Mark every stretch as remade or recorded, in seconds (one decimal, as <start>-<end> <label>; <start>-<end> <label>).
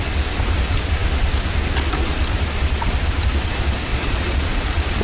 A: 0.0-3.9 recorded; 3.9-5.0 remade